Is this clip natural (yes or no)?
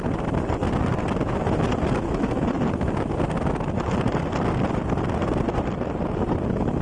yes